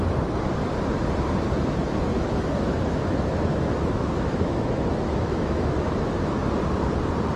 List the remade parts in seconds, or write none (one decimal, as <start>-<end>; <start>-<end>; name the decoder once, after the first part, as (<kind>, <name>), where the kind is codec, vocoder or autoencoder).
2.1-6.5 (autoencoder, DAC-VAE)

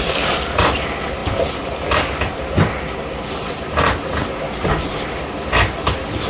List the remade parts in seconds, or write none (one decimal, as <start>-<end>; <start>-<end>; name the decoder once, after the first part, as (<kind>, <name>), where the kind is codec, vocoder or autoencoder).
none

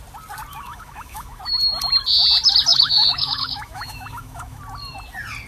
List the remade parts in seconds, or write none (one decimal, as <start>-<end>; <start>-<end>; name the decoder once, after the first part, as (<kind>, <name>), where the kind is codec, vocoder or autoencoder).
0.5-1.4 (autoencoder, DAC-VAE); 2.7-4.6

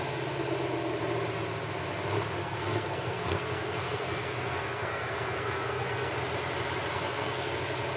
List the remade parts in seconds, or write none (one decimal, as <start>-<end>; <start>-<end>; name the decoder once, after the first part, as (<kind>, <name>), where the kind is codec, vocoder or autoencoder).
2.4-6.1 (codec, SNAC); 6.9-7.6

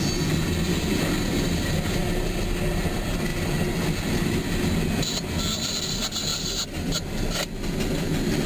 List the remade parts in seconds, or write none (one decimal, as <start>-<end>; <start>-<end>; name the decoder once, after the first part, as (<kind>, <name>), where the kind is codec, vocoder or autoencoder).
none

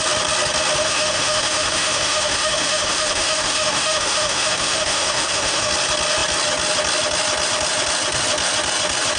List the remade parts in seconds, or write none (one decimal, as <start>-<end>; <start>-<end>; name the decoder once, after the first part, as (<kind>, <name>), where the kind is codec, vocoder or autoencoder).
0.8-5.7 (autoencoder, DAC-VAE)